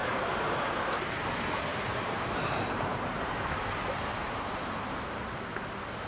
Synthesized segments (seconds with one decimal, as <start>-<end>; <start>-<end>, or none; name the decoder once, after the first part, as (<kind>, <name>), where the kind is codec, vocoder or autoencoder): 0.0-1.0 (vocoder, BigVGAN v2); 1.7-4.8